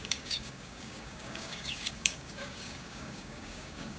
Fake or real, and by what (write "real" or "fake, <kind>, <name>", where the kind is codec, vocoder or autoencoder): fake, codec, DAC